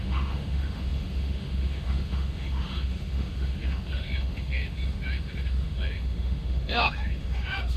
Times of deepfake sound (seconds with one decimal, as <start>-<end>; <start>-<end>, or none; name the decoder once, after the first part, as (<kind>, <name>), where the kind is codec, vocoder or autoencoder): 0.0-7.8 (autoencoder, DAC-VAE)